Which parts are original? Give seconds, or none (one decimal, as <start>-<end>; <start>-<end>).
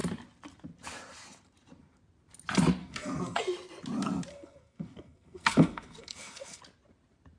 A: 0.0-2.8; 3.4-4.3; 6.6-7.4